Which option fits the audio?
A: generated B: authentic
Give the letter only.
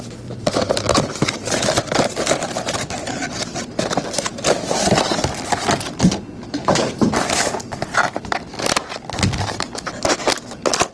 B